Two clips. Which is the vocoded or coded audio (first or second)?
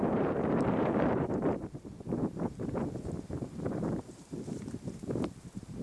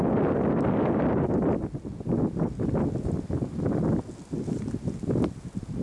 first